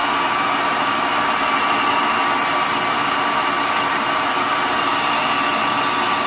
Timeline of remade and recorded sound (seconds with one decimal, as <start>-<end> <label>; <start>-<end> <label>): 0.0-6.3 recorded